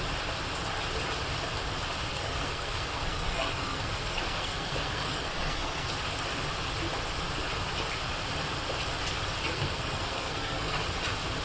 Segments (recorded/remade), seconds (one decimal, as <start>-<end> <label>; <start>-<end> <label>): 0.0-2.1 recorded; 2.1-5.9 remade; 5.9-9.4 recorded; 9.4-10.8 remade; 10.8-11.4 recorded